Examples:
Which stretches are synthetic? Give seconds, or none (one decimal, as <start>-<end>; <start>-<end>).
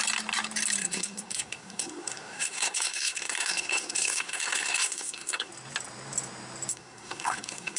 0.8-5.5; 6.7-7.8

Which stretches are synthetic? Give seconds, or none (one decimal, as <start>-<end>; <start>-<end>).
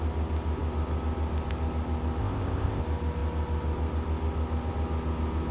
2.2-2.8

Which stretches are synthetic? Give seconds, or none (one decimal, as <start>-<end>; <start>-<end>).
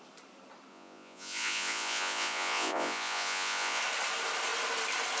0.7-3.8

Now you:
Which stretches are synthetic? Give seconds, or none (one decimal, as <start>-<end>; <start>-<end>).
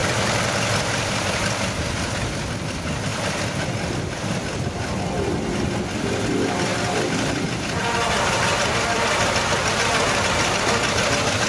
0.0-1.4; 6.7-7.8; 8.5-9.7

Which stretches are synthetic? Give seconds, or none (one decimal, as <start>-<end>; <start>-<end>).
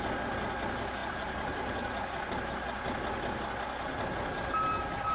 1.0-2.3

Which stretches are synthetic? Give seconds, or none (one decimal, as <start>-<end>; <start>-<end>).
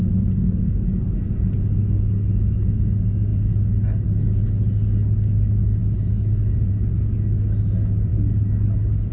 none